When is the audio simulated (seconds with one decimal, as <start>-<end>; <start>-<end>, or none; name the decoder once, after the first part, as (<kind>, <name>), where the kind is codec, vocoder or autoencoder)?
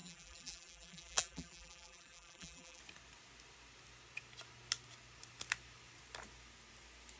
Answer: 0.0-2.8 (vocoder, BigVGAN v2)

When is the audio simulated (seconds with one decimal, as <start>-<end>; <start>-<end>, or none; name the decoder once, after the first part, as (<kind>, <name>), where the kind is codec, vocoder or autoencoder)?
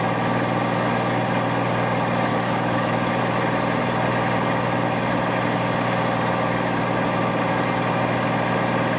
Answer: 2.3-3.2 (codec, DAC)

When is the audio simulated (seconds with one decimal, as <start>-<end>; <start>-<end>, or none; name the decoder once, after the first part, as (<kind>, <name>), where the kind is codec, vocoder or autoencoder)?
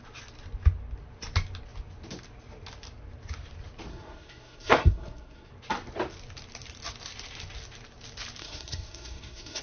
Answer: 3.9-5.5 (codec, SNAC); 8.4-9.6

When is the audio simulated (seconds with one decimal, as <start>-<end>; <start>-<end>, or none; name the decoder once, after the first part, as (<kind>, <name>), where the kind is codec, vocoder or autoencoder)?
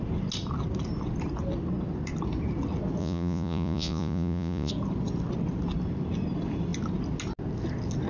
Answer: 3.0-4.7 (vocoder, Vocos)